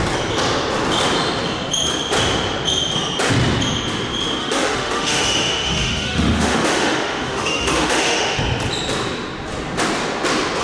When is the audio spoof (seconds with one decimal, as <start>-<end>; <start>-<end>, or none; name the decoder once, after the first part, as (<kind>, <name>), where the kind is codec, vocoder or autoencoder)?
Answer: 4.4-8.4 (autoencoder, DAC-VAE)